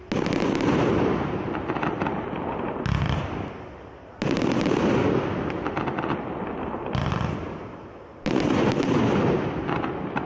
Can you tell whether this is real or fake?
real